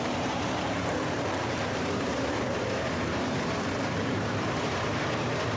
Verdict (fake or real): fake